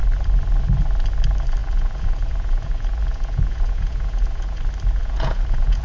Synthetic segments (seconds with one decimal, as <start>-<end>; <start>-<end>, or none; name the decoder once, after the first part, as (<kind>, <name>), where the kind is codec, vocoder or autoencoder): 1.6-4.6 (vocoder, Vocos); 5.0-5.8

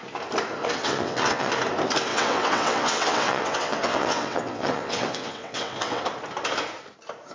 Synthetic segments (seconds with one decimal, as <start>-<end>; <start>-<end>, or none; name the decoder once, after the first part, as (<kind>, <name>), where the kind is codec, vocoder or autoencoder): 0.6-1.5 (vocoder, WaveNeXt); 2.1-6.0

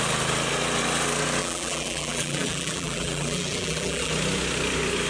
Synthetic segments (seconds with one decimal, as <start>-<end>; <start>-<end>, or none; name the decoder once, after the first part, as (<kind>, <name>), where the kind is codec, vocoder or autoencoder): 1.4-4.1 (vocoder, BigVGAN v2)

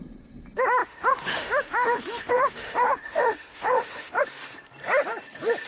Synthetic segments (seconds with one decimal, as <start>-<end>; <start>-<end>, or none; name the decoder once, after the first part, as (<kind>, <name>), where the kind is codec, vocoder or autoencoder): 0.8-4.2 (autoencoder, DAC-VAE)

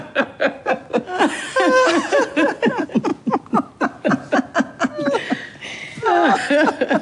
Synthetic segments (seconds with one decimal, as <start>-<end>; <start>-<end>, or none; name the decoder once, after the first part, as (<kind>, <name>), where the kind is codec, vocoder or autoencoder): none

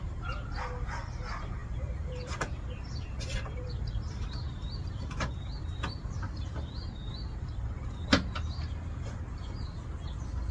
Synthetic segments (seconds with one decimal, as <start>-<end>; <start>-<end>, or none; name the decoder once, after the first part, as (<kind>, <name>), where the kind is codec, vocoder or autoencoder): 1.6-6.6 (vocoder, BigVGAN v2)

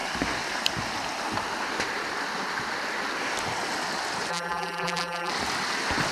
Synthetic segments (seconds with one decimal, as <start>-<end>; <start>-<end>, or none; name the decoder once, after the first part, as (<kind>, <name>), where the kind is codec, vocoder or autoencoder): 4.3-5.3 (vocoder, BigVGAN v2)